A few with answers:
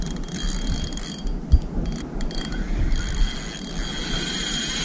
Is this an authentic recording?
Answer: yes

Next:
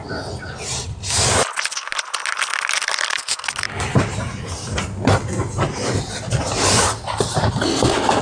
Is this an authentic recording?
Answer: yes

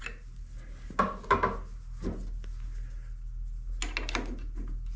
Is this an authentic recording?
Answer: yes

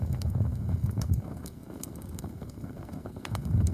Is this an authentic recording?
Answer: no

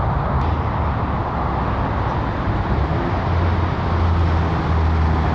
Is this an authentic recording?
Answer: yes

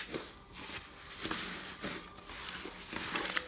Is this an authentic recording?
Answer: yes